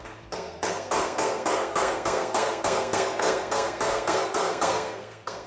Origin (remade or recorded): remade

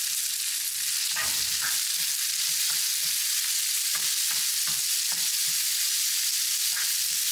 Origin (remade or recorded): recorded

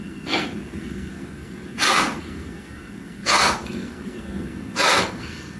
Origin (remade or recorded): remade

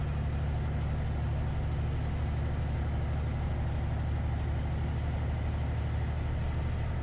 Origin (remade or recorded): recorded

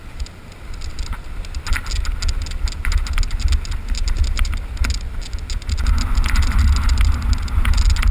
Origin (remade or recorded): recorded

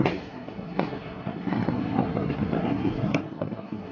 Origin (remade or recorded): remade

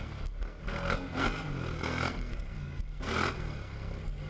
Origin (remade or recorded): remade